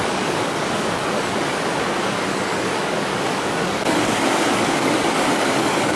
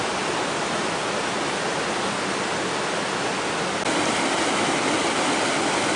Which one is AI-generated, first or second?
first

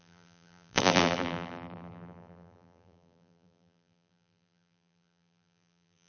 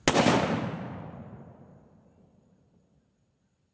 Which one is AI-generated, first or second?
first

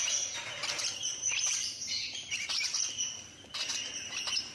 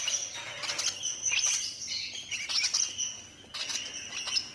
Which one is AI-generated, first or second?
first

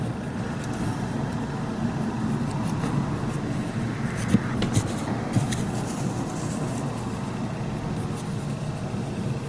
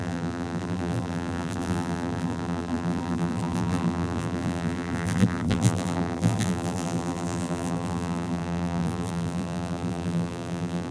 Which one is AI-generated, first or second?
second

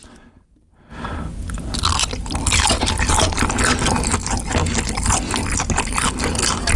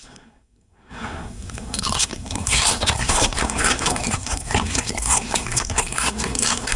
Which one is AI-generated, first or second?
second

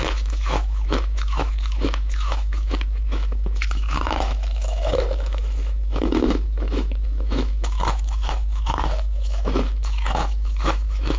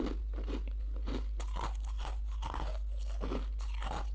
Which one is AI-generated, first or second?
first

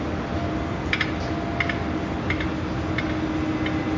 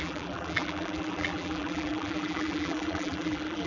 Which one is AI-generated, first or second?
second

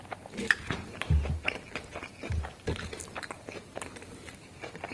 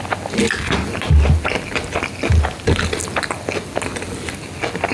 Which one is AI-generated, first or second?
first